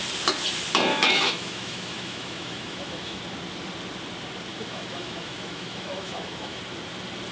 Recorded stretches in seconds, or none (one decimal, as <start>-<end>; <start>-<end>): 0.0-0.9; 3.2-4.5; 6.6-7.3